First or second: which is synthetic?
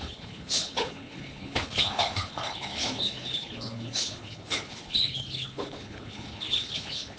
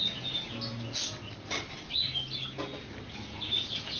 first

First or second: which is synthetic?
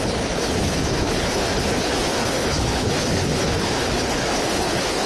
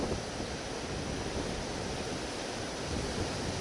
first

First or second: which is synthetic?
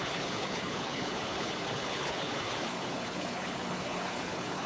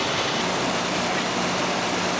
first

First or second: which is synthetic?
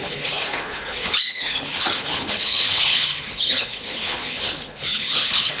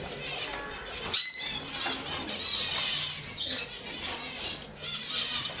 first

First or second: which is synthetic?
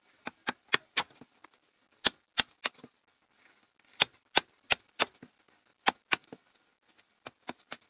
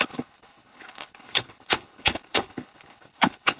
second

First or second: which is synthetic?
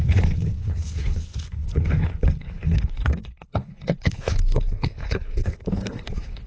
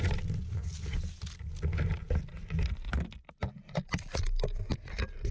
first